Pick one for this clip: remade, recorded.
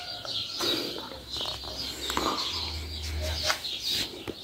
recorded